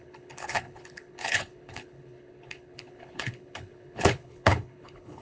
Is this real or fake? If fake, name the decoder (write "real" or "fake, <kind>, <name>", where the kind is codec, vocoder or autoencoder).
fake, codec, HILCodec